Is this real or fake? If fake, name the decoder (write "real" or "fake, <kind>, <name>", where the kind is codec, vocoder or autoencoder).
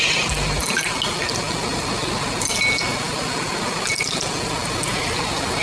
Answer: real